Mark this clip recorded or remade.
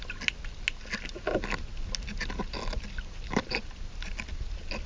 recorded